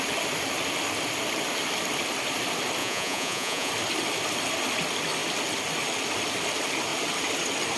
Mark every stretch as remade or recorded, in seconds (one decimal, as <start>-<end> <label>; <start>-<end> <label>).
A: 0.0-2.8 recorded; 2.8-3.7 remade; 3.7-7.8 recorded